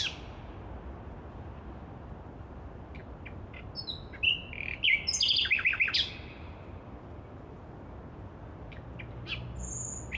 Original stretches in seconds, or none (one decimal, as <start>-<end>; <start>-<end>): 0.0-10.2